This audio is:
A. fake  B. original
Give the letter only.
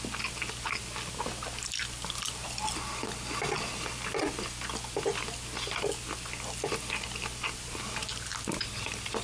B